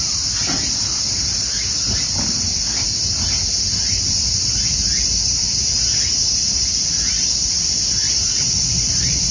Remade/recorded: recorded